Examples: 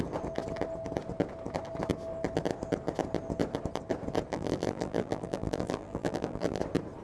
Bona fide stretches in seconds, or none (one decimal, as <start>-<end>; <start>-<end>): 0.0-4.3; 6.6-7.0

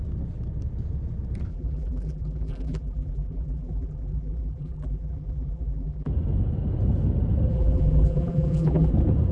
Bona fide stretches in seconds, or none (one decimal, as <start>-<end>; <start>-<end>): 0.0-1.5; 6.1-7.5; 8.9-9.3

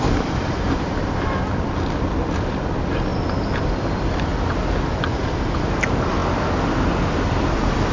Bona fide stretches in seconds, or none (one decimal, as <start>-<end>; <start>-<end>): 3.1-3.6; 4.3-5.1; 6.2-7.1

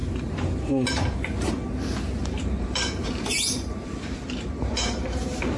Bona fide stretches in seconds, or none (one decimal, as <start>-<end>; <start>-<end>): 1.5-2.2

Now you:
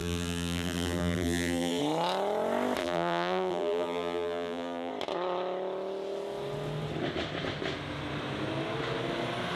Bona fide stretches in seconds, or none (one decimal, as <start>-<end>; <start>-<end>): 1.8-2.8; 4.9-9.6

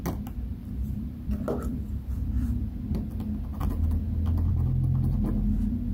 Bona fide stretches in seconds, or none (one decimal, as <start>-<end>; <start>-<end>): 0.0-0.5; 2.7-5.9

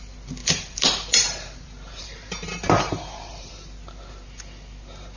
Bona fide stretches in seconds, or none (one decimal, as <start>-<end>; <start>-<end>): 0.0-0.4; 3.5-5.2

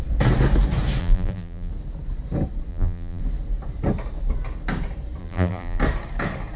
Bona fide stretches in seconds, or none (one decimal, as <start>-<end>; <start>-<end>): 0.0-1.0; 1.7-2.7; 3.2-5.2; 5.8-6.6